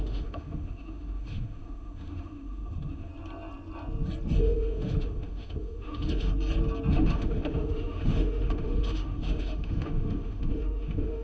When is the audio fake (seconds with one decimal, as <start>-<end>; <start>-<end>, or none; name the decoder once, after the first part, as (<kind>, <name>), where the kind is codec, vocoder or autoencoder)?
0.0-3.1 (autoencoder, DAC-VAE); 4.4-6.3; 6.9-11.2